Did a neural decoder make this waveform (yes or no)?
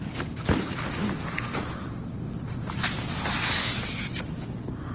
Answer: no